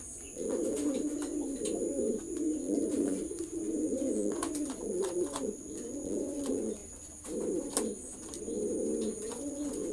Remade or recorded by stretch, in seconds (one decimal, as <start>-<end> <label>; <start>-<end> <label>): 0.0-1.3 remade; 1.3-2.1 recorded; 2.1-6.8 remade; 6.8-9.3 recorded; 9.3-9.9 remade